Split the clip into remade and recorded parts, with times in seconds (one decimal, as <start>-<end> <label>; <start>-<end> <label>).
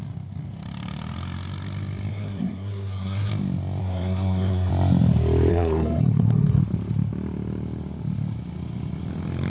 0.0-2.1 recorded; 2.1-3.3 remade; 3.3-3.8 recorded; 3.8-4.7 remade; 4.7-5.5 recorded; 5.5-6.6 remade; 6.6-9.5 recorded